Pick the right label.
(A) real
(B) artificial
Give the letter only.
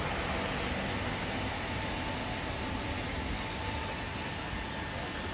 A